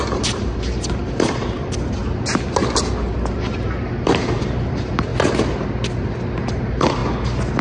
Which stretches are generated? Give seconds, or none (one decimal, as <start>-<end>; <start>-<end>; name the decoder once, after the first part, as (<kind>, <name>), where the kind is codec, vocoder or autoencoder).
0.0-2.0 (vocoder, BigVGAN v2); 3.3-5.1; 6.5-7.0